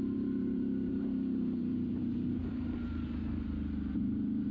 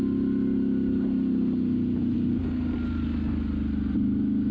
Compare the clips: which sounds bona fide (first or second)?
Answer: second